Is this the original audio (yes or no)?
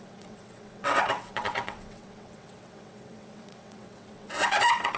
no